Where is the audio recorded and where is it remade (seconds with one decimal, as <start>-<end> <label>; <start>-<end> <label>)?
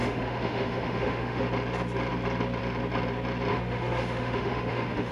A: 0.0-1.4 remade; 1.4-3.5 recorded; 3.5-5.1 remade